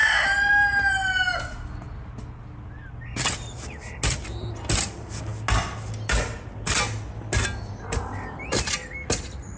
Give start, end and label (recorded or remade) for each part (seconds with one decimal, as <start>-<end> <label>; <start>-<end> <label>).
0.0-9.6 recorded